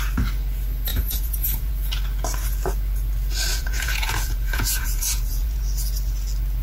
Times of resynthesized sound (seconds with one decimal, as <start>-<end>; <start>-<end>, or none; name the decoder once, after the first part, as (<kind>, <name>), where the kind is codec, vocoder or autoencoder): 0.9-1.7 (vocoder, Vocos); 3.5-5.6